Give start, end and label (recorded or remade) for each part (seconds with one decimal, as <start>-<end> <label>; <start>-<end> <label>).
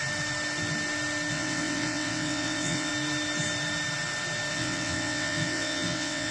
0.0-1.3 recorded; 1.3-2.9 remade; 2.9-4.5 recorded; 4.5-6.3 remade